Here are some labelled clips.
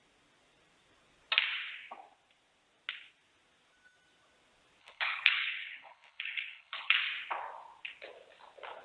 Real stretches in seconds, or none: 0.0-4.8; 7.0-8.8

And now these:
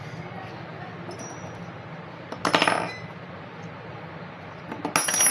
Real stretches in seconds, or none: 0.0-5.3

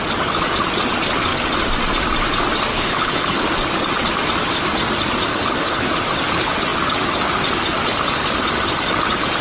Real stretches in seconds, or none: 0.0-2.7; 3.4-5.3; 5.9-9.4

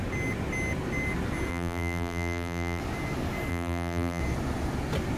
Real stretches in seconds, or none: 0.0-1.5; 2.8-3.5; 4.2-5.2

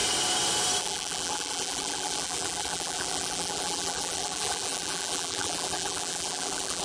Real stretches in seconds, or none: 0.0-0.8